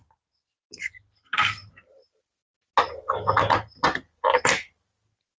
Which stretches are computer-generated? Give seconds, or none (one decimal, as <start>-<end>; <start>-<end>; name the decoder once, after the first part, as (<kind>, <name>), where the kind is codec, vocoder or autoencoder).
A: none